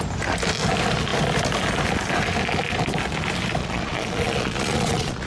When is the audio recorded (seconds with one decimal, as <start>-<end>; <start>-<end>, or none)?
0.0-3.6